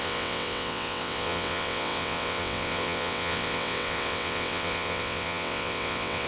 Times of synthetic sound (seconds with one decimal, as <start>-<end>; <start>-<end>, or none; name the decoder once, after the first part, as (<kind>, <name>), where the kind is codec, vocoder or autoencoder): 0.0-6.3 (vocoder, WaveNeXt)